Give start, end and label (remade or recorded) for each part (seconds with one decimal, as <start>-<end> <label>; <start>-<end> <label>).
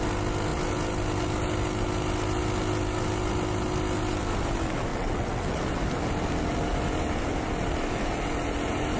0.0-4.9 recorded; 4.9-5.6 remade; 5.6-9.0 recorded